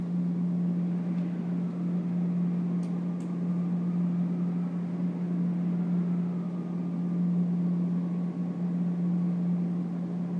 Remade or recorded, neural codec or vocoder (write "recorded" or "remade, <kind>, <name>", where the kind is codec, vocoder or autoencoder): recorded